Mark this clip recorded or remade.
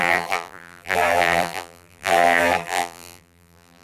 remade